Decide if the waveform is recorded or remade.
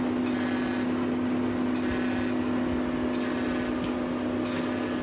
recorded